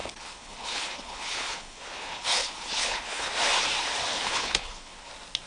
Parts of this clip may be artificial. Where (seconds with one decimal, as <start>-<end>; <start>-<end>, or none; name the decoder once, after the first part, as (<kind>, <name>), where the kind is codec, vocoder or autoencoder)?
0.0-3.3 (codec, HILCodec); 4.1-5.1